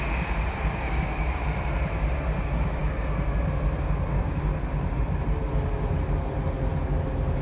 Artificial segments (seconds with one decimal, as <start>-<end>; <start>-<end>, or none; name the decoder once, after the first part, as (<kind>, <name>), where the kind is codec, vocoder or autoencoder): 0.0-1.4 (codec, DAC); 2.4-2.8; 3.8-4.5